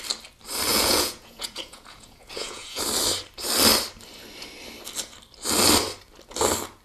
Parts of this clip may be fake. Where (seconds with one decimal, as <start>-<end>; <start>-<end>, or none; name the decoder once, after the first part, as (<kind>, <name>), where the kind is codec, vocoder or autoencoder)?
0.7-2.8 (vocoder, Vocos)